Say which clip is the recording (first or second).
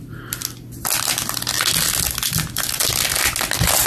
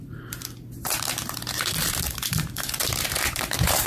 first